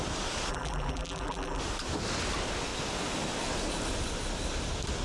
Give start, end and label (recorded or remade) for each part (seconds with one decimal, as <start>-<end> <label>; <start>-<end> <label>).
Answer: 0.0-0.5 recorded; 0.5-1.6 remade; 1.6-5.0 recorded